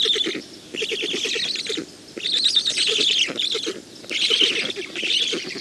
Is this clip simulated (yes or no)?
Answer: no